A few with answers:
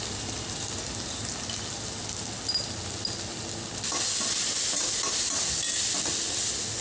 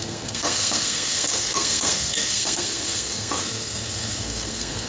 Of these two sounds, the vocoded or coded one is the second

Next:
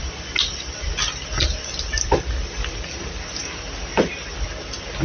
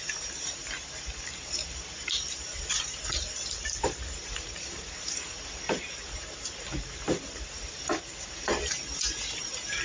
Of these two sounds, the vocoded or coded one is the second